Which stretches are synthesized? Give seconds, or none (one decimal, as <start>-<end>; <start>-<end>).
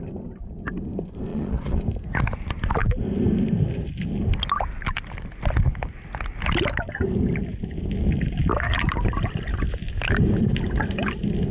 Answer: 1.3-1.8